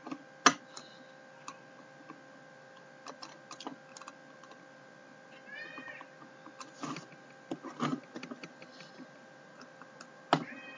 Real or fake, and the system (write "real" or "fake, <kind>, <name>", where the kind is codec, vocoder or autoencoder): real